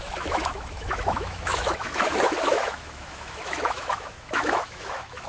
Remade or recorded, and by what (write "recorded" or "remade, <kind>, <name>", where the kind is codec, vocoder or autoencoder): remade, autoencoder, DAC-VAE